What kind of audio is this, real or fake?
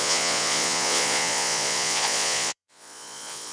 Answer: fake